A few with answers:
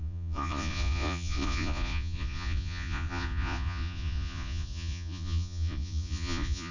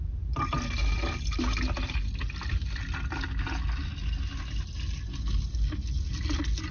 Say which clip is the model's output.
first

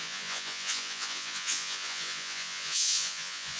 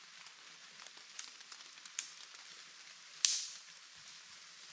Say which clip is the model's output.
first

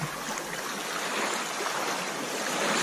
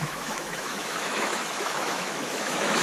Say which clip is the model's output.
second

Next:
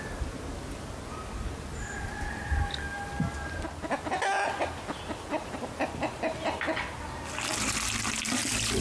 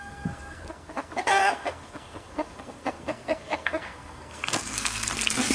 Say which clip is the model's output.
second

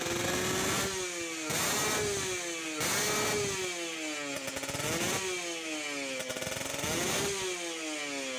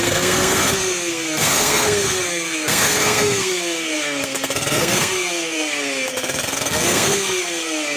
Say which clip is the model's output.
second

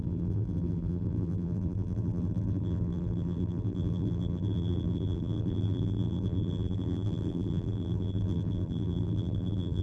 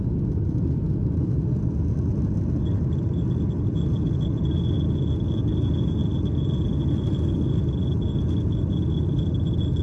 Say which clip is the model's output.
first